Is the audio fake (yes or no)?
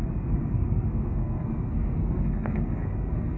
yes